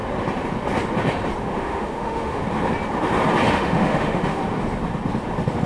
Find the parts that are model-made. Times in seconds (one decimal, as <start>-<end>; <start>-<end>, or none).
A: 1.4-2.4; 3.5-4.4